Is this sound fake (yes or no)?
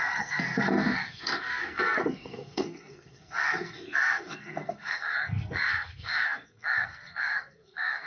yes